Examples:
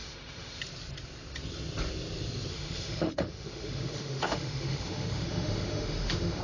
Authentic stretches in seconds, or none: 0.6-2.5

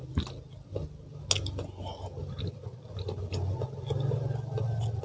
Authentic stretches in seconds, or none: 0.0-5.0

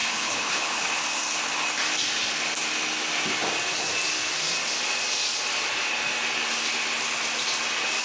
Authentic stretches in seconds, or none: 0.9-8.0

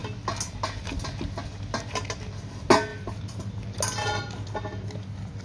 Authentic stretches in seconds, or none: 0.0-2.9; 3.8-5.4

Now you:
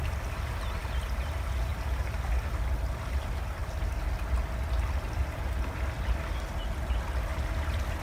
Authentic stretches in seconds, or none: 0.0-8.0

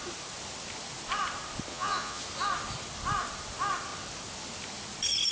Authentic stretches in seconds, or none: 0.0-1.7; 2.2-5.3

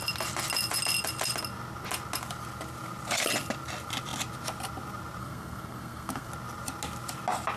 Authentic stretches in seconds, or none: 0.0-5.2; 6.3-7.6